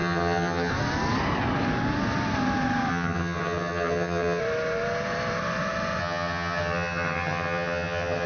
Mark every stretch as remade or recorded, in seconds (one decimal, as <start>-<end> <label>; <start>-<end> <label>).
0.0-0.7 remade; 0.7-2.9 recorded; 2.9-4.4 remade; 4.4-6.0 recorded; 6.0-8.3 remade